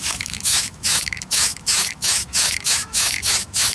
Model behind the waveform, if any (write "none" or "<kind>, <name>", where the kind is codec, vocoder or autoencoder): autoencoder, DAC-VAE